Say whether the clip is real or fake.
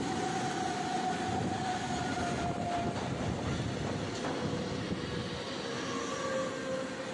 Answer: real